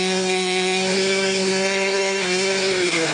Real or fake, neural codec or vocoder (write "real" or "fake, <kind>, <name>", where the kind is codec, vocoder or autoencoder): fake, codec, SNAC